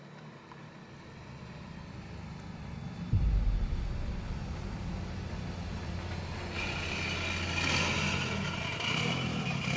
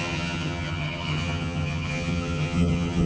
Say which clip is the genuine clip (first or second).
first